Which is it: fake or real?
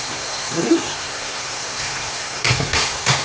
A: fake